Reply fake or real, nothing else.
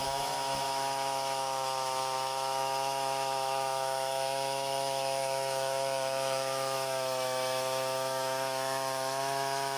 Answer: fake